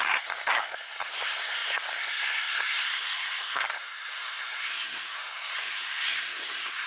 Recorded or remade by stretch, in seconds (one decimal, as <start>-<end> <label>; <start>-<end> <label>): 0.0-6.9 remade